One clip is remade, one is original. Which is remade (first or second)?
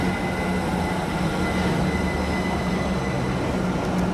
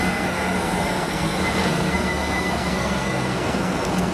second